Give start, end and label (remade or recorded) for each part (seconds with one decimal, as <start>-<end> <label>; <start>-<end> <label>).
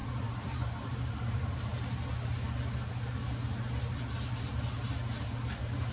0.0-1.7 remade; 1.7-5.2 recorded; 5.2-5.9 remade